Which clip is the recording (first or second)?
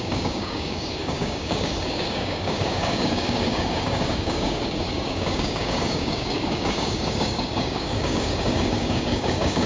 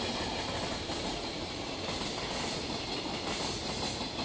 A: second